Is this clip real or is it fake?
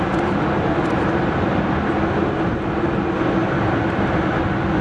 real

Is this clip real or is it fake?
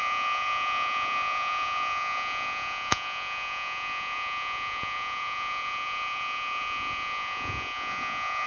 fake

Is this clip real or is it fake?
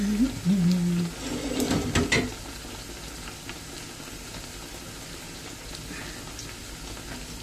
real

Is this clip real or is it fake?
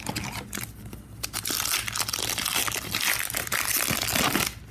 real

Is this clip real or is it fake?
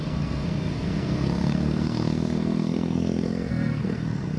fake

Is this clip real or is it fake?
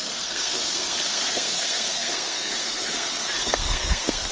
fake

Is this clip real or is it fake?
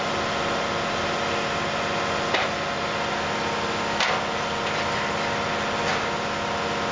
real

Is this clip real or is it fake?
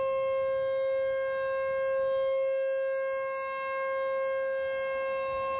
real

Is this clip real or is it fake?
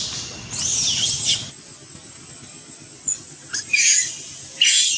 real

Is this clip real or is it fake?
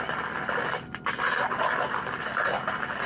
real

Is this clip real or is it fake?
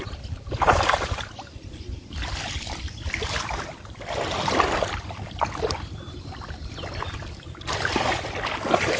real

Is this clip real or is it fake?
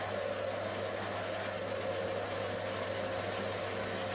real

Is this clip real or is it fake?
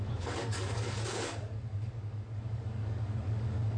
fake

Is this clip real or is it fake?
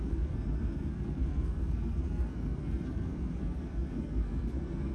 fake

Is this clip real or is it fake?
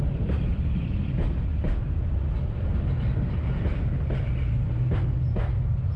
real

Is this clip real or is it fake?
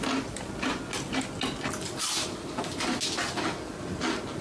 real